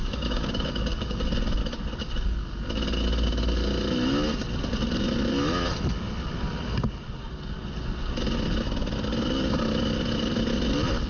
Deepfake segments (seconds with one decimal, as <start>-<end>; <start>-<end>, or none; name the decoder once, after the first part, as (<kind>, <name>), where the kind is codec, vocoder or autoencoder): 0.0-1.2 (codec, DAC)